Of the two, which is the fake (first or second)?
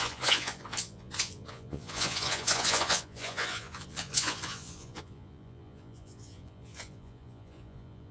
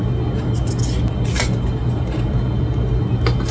first